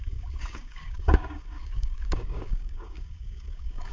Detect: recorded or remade remade